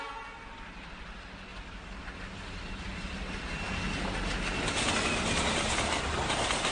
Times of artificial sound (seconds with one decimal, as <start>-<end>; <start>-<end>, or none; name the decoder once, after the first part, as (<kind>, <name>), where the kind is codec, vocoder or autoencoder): none